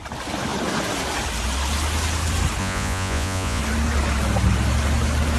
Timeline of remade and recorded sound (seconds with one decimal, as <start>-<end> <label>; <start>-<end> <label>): 0.0-2.6 recorded; 2.6-3.6 remade; 3.6-5.4 recorded